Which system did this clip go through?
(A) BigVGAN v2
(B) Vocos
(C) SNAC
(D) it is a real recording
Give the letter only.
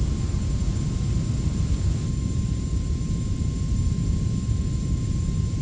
A